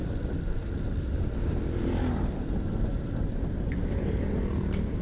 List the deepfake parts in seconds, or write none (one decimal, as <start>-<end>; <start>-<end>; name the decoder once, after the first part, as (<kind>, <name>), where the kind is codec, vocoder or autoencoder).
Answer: 2.9-3.7 (vocoder, BigVGAN v2)